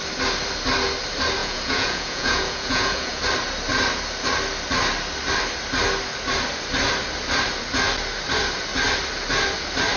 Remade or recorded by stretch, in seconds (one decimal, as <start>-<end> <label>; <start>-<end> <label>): 0.0-1.4 recorded; 1.4-3.2 remade; 3.2-10.0 recorded